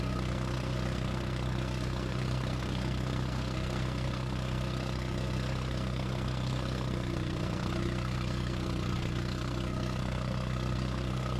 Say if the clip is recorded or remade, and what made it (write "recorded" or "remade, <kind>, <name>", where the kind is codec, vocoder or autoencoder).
remade, codec, SNAC